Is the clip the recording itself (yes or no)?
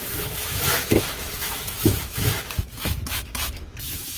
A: no